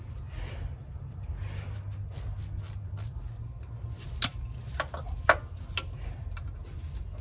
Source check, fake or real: real